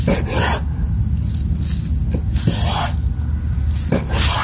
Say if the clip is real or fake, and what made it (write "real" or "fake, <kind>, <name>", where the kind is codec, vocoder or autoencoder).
real